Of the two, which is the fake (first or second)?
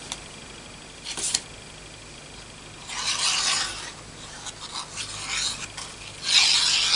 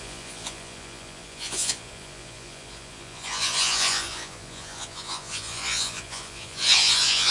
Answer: second